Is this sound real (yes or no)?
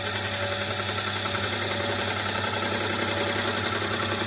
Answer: yes